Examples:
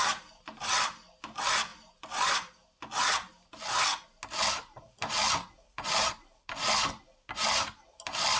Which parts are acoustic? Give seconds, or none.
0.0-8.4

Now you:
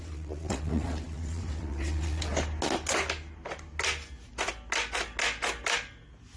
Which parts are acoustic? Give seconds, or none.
2.3-6.4

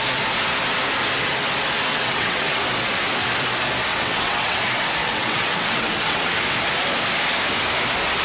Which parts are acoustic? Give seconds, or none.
0.0-1.9; 2.6-3.9; 4.6-5.0; 6.4-8.2

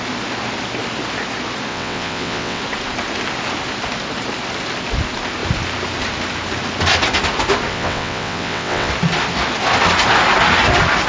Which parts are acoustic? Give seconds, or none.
0.0-1.7; 2.6-7.7; 8.9-11.1

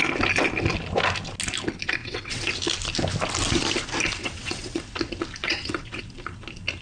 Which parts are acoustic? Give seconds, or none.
0.0-2.0; 2.5-4.2; 4.8-5.4; 6.0-6.8

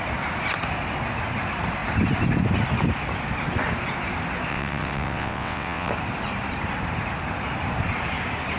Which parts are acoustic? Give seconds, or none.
0.0-4.5; 5.9-8.6

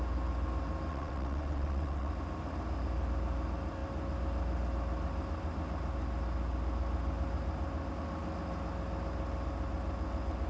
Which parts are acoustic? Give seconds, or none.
0.0-0.9; 2.1-10.5